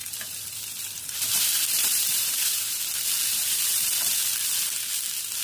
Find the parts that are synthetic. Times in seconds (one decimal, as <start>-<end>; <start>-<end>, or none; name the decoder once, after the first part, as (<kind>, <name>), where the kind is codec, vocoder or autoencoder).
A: 0.0-2.8 (vocoder, BigVGAN v2); 3.3-3.9

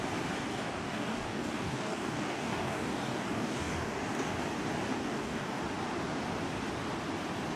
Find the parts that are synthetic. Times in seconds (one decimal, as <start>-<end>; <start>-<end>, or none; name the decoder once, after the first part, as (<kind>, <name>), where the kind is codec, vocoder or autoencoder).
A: 0.5-4.4 (codec, DAC); 5.0-5.6

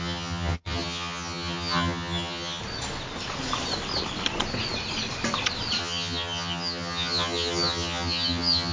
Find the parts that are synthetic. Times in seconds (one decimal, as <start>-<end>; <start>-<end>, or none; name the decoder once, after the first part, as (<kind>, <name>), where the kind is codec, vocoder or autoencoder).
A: 0.0-2.6 (vocoder, HiFi-GAN); 5.8-8.7

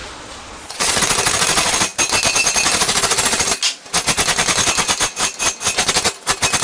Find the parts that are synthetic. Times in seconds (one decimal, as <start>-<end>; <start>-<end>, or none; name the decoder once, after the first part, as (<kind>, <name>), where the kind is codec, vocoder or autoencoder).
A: 0.0-1.0 (vocoder, Vocos)

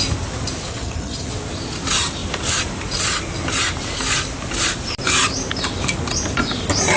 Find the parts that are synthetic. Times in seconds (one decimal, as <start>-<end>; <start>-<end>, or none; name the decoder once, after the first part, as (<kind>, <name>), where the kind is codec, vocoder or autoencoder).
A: 0.7-1.3 (vocoder, HiFi-GAN)